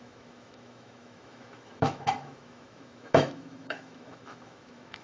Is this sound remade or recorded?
remade